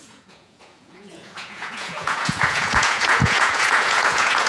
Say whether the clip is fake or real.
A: fake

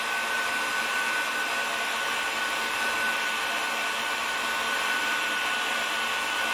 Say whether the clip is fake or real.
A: real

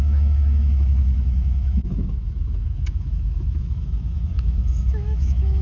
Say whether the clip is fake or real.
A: fake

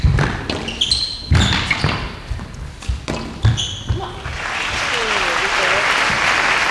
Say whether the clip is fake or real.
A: real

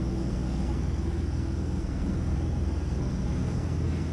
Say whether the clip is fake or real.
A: fake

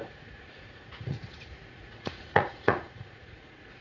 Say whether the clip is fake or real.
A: fake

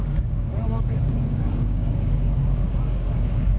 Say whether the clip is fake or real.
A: fake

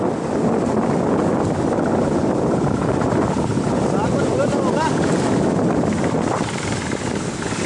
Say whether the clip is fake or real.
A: real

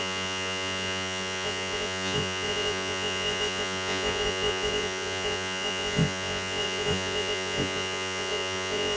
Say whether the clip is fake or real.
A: fake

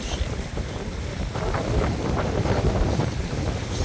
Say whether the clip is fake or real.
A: real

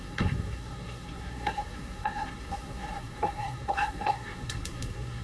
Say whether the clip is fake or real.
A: fake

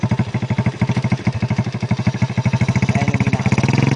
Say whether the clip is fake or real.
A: real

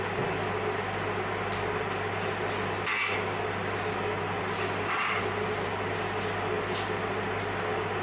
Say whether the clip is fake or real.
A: real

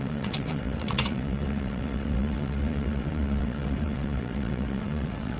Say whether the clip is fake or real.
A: fake